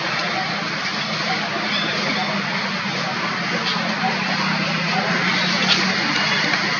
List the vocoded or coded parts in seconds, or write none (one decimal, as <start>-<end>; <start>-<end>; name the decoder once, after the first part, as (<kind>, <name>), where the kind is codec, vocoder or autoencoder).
none

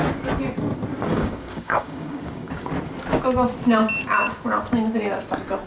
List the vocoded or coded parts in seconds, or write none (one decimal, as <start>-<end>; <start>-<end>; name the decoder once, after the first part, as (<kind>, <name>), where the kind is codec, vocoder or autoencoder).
1.1-2.7 (codec, DAC)

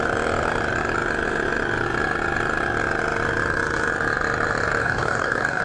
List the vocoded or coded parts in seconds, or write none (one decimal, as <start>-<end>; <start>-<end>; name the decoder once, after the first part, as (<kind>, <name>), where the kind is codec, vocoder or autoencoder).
4.8-5.6 (codec, DAC)

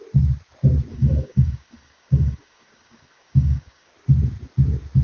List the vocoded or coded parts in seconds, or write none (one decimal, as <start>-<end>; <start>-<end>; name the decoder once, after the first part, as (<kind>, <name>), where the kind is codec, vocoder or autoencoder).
0.9-3.9 (codec, DAC)

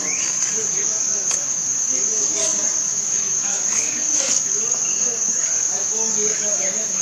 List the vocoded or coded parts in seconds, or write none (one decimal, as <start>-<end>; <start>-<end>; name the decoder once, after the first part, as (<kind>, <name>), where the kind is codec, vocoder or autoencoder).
0.0-7.0 (codec, DAC)

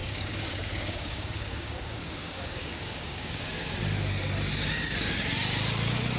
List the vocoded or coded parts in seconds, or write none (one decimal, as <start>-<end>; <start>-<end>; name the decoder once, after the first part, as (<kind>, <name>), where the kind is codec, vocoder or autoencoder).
0.0-3.7 (codec, DAC)

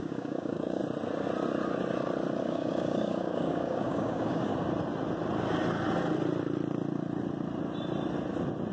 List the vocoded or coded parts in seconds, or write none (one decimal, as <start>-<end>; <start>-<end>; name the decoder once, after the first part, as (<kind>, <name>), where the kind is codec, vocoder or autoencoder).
0.0-0.8 (codec, DAC); 2.4-4.5